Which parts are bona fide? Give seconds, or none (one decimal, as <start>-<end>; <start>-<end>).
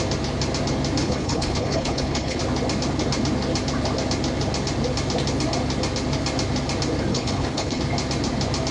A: 0.0-1.0; 2.4-7.1; 7.8-8.7